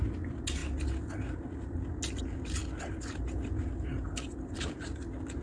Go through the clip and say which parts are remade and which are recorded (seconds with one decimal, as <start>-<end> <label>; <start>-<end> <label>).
0.0-2.6 recorded; 2.6-5.0 remade; 5.0-5.4 recorded